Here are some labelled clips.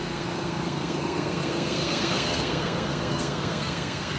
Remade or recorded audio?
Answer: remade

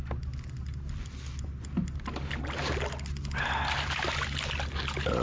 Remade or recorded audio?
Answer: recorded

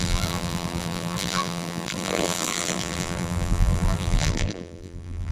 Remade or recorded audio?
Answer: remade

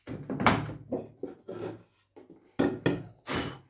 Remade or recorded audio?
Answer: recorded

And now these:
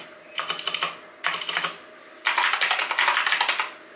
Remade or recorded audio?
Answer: recorded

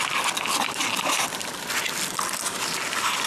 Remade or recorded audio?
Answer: recorded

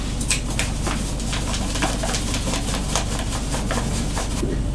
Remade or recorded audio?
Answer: recorded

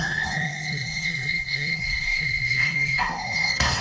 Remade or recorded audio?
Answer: remade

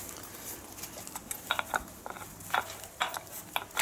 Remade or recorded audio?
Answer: recorded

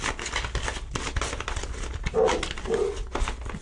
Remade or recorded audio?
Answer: recorded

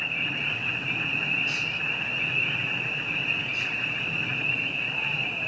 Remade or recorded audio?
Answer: recorded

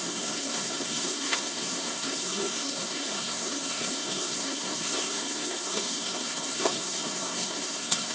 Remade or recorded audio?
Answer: remade